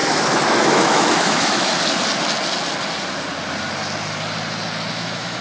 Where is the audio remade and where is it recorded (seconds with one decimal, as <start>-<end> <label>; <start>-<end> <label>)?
0.0-0.6 recorded; 0.6-1.7 remade; 1.7-4.9 recorded; 4.9-5.4 remade